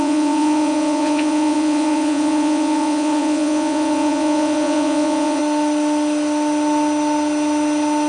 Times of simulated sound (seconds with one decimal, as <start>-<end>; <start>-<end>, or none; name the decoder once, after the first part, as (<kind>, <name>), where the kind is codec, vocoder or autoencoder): 0.0-5.4 (vocoder, Vocos)